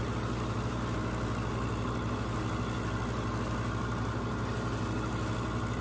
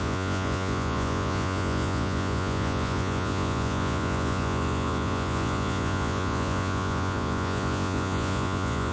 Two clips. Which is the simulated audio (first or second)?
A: second